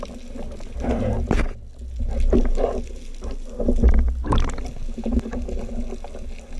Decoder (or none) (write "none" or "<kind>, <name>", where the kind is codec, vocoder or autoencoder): none